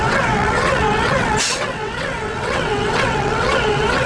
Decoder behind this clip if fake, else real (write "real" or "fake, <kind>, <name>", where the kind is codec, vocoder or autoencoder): fake, vocoder, WaveNeXt